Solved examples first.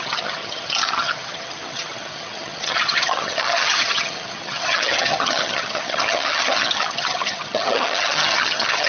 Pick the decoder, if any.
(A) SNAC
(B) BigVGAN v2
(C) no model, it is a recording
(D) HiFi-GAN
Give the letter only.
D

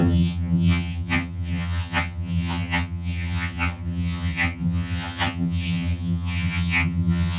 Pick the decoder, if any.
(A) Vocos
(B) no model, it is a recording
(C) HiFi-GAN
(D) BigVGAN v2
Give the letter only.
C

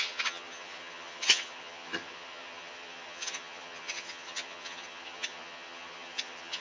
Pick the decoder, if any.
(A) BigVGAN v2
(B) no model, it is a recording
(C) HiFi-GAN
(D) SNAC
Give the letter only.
C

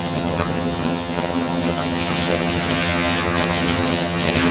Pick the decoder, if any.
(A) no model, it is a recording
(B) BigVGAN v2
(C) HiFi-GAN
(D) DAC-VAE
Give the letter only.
C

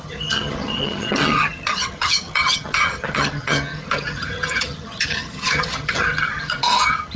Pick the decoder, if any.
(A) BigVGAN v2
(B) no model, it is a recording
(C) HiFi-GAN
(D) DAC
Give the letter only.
C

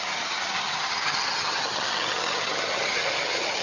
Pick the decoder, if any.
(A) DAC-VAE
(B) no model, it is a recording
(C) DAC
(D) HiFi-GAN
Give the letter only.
D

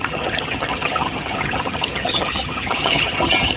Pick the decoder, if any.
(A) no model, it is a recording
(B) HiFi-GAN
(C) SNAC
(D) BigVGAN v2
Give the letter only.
B